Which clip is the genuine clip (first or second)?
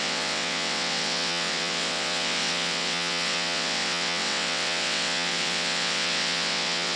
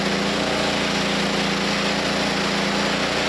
second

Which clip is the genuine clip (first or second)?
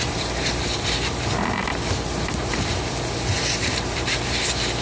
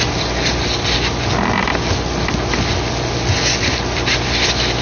second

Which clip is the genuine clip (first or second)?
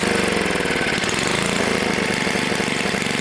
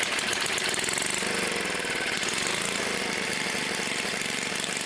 first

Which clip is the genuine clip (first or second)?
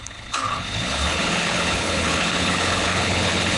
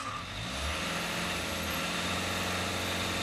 second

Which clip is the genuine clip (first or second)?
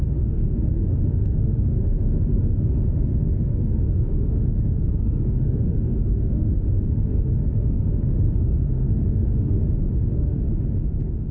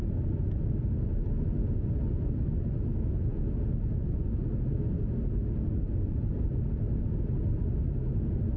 second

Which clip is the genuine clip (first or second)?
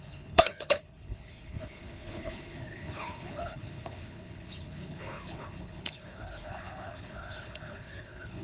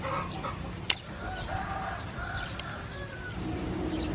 second